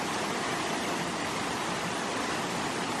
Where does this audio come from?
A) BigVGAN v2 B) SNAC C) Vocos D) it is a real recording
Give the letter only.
D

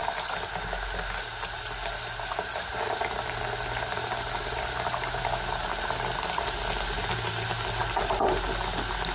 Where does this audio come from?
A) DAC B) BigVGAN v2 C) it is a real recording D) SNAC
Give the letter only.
C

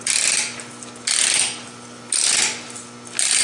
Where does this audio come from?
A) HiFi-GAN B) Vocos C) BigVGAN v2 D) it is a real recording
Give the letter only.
D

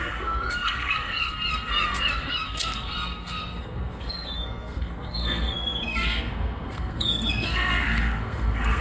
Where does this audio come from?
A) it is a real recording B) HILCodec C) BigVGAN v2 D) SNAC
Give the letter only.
D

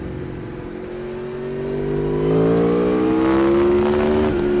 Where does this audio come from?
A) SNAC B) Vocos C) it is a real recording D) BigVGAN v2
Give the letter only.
C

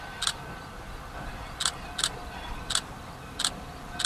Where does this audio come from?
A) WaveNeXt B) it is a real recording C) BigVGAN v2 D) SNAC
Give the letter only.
B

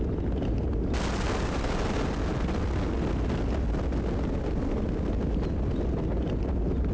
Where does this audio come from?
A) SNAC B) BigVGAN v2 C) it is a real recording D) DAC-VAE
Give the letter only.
C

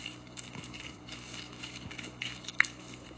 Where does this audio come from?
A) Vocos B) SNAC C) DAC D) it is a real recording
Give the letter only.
C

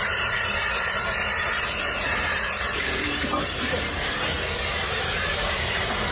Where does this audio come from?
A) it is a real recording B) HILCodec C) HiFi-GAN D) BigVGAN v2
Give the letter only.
D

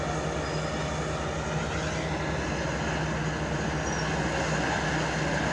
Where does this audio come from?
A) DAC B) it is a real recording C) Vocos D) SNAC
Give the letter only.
B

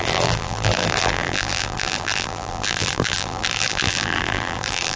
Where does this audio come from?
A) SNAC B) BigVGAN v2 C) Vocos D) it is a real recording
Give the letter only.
B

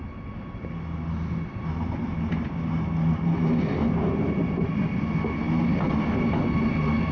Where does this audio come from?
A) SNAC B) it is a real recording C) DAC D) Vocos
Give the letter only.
B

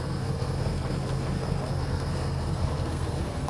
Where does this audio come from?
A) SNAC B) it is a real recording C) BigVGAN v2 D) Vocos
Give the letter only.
A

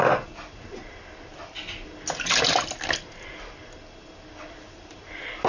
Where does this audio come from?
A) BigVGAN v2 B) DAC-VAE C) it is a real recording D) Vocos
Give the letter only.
C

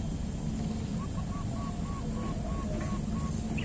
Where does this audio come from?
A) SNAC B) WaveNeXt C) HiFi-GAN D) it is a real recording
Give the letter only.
D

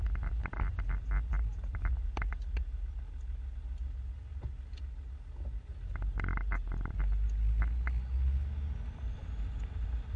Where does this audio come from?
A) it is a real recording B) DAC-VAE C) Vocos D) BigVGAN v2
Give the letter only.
A